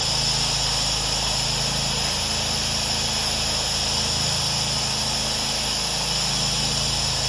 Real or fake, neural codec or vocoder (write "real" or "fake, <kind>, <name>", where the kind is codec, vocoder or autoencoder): real